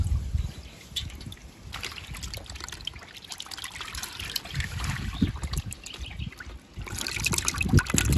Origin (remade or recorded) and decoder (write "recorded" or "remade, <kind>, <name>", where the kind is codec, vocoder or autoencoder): recorded